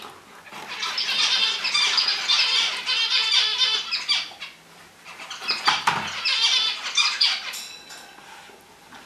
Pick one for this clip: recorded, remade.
recorded